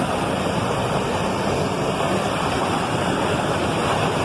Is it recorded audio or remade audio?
recorded